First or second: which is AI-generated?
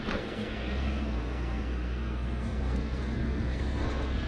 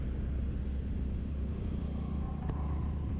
first